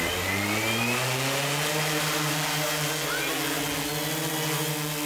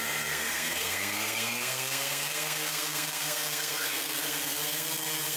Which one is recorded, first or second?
first